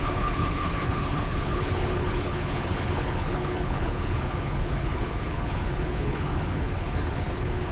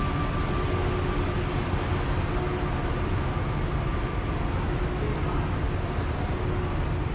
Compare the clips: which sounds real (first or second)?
second